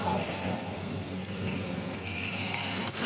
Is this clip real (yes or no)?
no